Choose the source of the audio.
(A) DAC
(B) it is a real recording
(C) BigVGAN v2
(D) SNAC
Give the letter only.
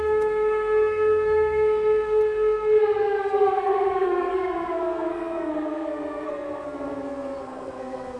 D